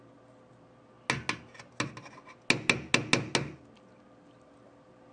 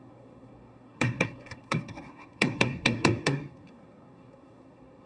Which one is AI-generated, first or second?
second